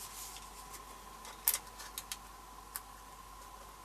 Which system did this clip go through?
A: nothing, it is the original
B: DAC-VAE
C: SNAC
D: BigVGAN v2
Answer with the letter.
A